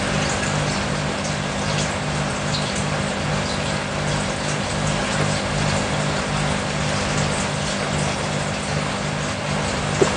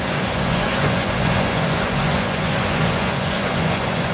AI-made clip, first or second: second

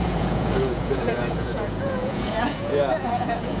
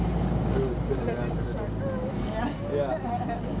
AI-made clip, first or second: first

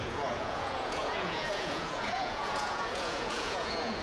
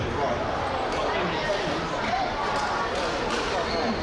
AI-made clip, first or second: first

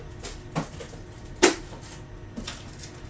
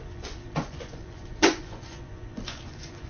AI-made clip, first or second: second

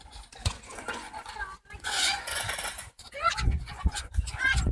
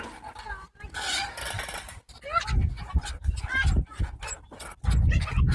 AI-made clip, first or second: first